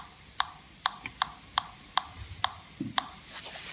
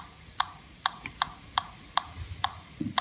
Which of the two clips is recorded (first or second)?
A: first